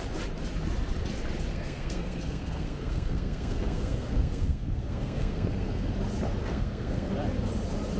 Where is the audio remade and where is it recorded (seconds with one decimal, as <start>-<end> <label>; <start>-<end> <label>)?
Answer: 0.0-1.5 recorded; 1.5-5.9 remade; 5.9-6.4 recorded; 6.4-7.1 remade; 7.1-8.0 recorded